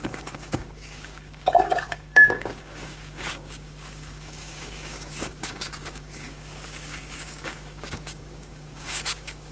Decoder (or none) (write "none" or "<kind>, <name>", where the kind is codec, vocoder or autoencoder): codec, DAC